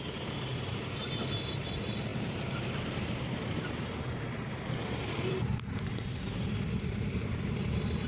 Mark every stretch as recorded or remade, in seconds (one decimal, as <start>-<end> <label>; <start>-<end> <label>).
0.0-8.1 remade